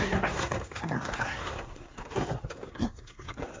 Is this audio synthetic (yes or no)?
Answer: yes